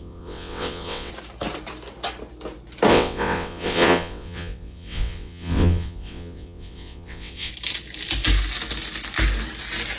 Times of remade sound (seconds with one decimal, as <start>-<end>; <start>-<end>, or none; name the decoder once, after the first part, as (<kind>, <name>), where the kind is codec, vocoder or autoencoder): 0.0-1.1 (vocoder, WaveNeXt); 2.9-7.5